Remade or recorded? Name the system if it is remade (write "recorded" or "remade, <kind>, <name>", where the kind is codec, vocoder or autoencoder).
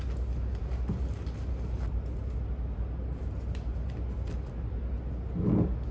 recorded